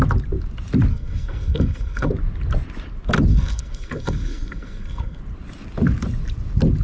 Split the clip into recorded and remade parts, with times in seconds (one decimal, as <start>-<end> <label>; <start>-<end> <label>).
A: 0.0-0.9 recorded; 0.9-2.1 remade; 2.1-3.3 recorded; 3.3-5.2 remade; 5.2-6.8 recorded